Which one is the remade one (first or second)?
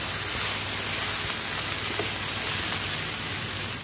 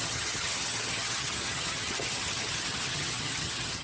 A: second